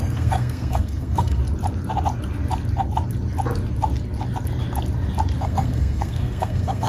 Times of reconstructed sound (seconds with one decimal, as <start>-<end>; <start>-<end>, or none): 0.0-1.4; 5.4-6.9